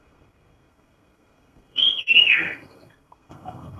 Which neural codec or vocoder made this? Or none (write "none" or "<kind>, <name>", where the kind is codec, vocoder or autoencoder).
codec, SNAC